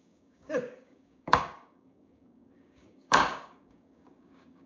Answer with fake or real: fake